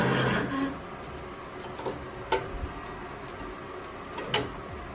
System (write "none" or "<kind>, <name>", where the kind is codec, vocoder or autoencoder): none